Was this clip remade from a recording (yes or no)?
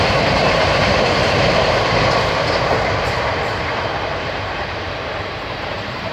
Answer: yes